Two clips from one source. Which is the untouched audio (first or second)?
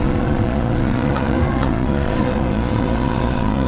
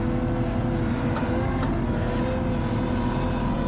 second